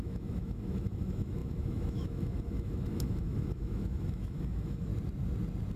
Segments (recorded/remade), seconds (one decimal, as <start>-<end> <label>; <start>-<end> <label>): 0.0-4.9 remade; 4.9-5.8 recorded